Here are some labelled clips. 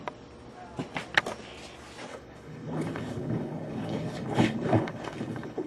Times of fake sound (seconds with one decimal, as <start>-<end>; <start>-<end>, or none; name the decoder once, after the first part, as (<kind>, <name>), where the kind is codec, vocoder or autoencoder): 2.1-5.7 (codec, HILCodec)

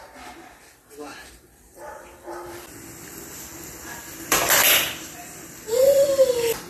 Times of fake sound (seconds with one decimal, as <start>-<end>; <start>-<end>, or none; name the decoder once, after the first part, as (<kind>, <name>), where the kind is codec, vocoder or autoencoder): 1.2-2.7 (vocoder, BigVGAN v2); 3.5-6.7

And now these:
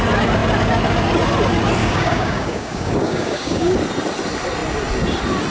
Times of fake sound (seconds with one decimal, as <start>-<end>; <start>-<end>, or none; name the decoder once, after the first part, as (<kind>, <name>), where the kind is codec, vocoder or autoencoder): 1.8-3.7 (codec, DAC)

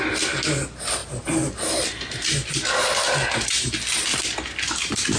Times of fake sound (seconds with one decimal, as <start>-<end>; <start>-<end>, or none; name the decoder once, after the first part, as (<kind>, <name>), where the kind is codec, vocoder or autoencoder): none